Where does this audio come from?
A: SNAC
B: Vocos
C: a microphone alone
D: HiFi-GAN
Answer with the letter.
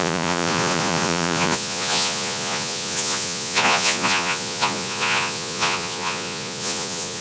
B